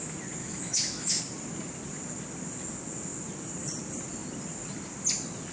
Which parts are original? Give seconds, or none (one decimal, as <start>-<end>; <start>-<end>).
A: 0.0-0.4; 1.2-5.5